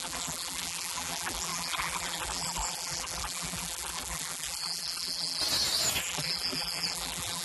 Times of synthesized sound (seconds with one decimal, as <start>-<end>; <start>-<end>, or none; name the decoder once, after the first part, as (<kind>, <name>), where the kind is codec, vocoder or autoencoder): 0.0-5.4 (vocoder, BigVGAN v2); 6.0-7.4